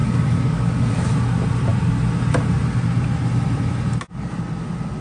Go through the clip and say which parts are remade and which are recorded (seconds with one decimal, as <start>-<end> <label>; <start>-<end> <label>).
0.0-0.9 remade; 0.9-5.0 recorded